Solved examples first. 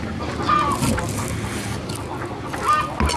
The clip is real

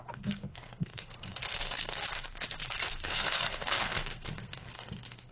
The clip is fake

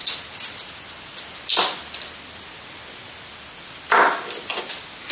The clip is real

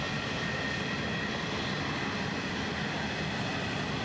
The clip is real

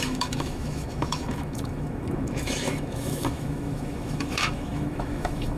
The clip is fake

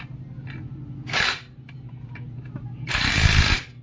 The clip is real